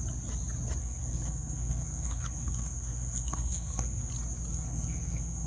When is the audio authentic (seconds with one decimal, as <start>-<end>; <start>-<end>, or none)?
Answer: 0.0-0.8; 4.1-4.5